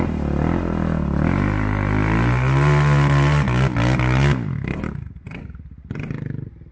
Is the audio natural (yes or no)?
yes